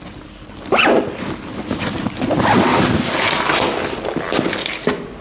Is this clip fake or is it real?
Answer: real